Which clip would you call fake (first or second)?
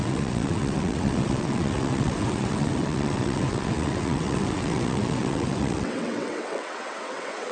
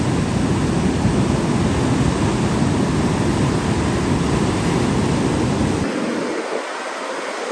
first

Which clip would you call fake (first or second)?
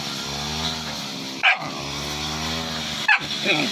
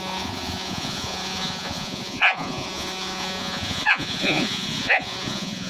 second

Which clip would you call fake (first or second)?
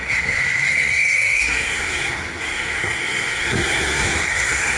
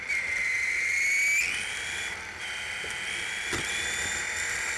first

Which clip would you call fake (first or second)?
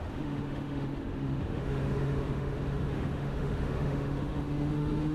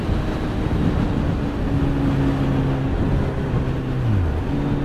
first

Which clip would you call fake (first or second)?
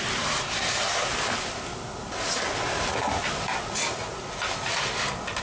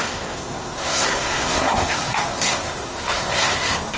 second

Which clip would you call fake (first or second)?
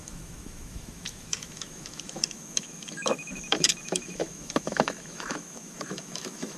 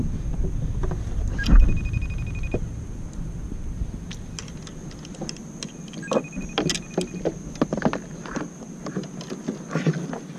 first